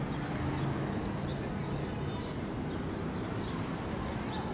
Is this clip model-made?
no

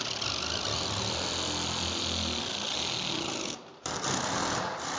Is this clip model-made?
no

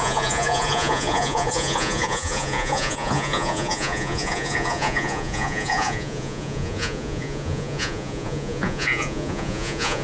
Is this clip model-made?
yes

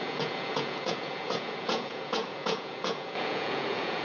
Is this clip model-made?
yes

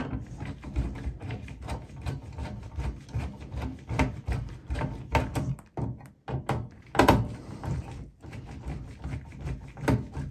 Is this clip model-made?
no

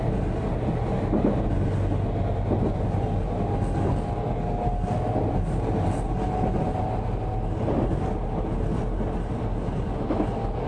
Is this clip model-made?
no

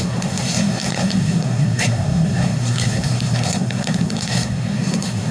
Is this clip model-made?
yes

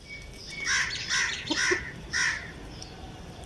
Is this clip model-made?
no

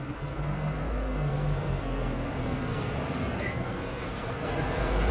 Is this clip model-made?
yes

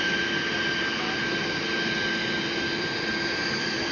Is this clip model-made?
no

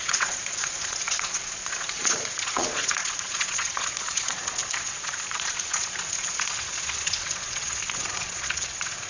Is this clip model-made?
yes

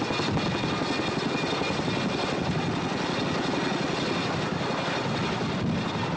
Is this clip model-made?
no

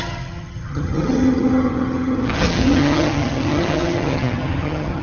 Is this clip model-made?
yes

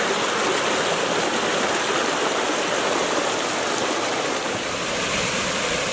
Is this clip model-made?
no